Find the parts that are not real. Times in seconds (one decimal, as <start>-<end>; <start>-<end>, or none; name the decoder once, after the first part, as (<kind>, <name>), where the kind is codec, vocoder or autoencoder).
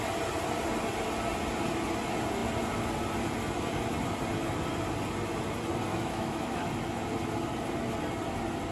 5.9-6.7 (autoencoder, DAC-VAE)